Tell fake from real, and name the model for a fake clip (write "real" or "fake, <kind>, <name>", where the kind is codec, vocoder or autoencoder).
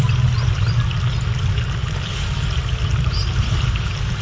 real